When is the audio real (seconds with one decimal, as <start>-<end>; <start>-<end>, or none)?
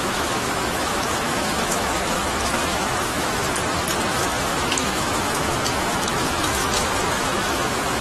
3.4-4.1